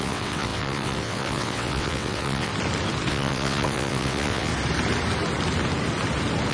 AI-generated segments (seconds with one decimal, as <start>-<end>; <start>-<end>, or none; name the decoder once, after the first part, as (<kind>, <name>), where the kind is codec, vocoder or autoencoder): 0.0-2.5 (vocoder, WaveNeXt); 3.1-4.5

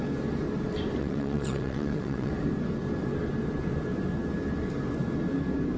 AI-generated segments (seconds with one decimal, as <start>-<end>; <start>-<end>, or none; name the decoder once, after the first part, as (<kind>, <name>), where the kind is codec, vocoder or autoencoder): 1.0-2.3 (vocoder, WaveNeXt)

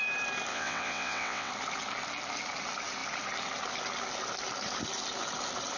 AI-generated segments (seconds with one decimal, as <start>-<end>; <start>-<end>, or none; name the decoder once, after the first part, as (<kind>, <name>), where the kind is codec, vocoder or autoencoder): 0.5-1.5 (vocoder, WaveNeXt)

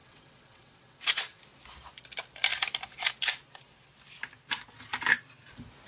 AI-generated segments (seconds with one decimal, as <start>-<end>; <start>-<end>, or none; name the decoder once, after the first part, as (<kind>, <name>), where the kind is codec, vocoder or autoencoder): 0.0-1.4 (vocoder, WaveNeXt)

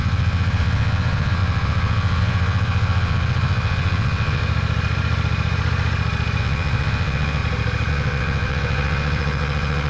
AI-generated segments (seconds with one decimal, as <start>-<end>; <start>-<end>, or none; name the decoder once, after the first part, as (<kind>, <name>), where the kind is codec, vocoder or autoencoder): 0.0-4.4 (vocoder, WaveNeXt); 6.4-7.4; 7.9-9.9